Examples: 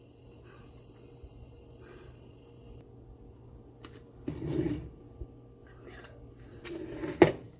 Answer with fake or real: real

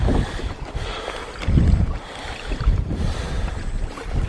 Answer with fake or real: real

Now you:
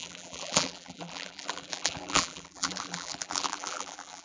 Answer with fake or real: fake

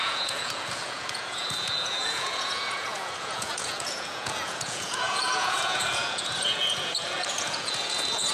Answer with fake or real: fake